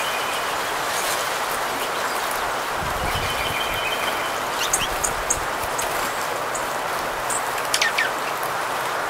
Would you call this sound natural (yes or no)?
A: yes